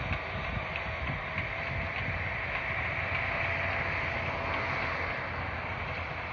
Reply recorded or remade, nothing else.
recorded